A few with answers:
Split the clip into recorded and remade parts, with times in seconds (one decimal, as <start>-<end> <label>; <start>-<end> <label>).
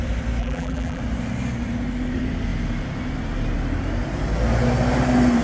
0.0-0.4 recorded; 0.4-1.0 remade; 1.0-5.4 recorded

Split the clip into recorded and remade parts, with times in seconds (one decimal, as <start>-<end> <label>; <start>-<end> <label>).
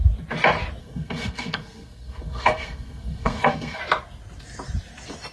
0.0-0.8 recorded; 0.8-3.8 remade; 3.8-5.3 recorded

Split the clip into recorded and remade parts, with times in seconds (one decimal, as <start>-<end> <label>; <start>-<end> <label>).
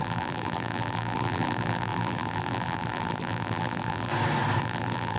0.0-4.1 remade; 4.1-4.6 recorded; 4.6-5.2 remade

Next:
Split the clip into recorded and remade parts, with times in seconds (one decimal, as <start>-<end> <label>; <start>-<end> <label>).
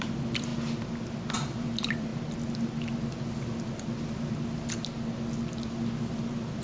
0.0-0.5 remade; 0.5-1.3 recorded; 1.3-2.1 remade; 2.1-6.0 recorded; 6.0-6.6 remade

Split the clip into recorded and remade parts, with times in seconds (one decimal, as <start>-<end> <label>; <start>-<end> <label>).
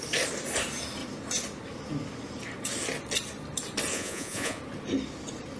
0.0-3.9 recorded; 3.9-4.6 remade; 4.6-5.6 recorded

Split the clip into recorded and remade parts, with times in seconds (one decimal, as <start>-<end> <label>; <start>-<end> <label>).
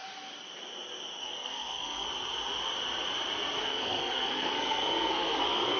0.0-1.2 recorded; 1.2-2.1 remade; 2.1-3.6 recorded; 3.6-5.8 remade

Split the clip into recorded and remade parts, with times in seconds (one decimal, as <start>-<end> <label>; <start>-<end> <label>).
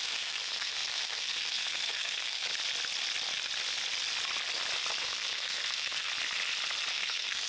0.0-2.5 remade; 2.5-5.0 recorded; 5.0-6.1 remade; 6.1-6.9 recorded; 6.9-7.5 remade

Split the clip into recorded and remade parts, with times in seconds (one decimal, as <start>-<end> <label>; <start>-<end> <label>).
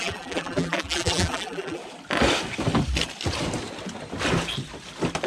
0.0-1.8 remade; 1.8-5.3 recorded